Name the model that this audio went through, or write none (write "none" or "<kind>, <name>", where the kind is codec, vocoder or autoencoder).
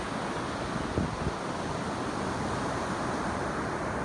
none